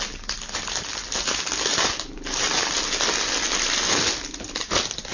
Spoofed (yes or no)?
no